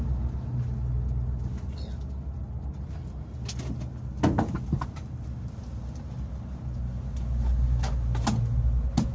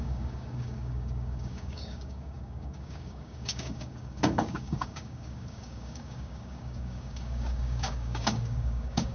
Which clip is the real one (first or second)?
first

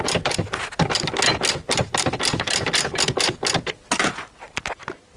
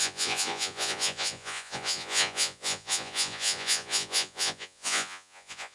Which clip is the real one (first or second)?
first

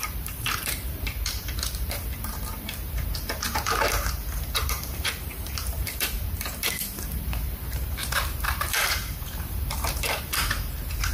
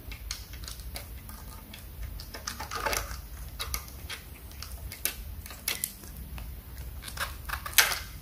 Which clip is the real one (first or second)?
second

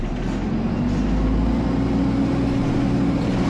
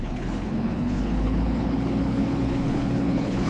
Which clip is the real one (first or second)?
first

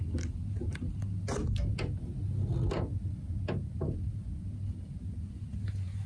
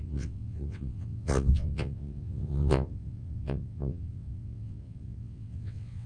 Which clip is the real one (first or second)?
first